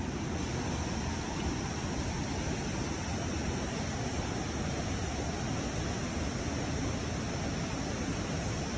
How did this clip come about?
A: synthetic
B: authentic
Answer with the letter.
B